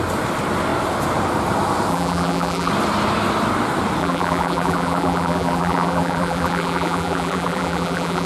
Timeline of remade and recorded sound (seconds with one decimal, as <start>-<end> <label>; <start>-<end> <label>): 0.0-1.9 recorded; 1.9-2.7 remade; 2.7-4.0 recorded; 4.0-8.3 remade